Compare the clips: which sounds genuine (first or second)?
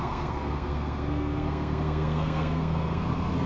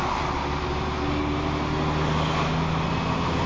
second